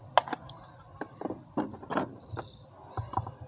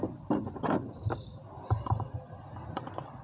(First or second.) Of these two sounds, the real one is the first